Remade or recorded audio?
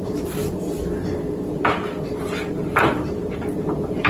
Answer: recorded